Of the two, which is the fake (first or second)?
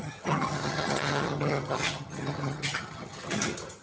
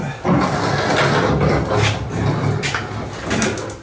first